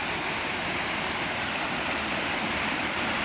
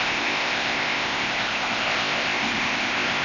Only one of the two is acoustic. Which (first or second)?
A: first